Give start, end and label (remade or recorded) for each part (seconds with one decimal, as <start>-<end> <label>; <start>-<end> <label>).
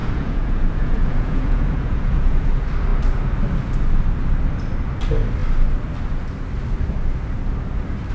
0.0-2.5 remade; 2.5-8.1 recorded